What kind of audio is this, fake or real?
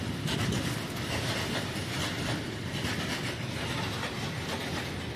real